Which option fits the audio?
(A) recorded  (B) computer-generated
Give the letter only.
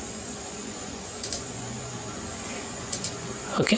B